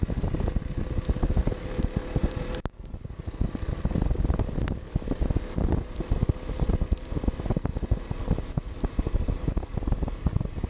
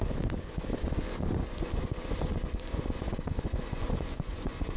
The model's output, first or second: second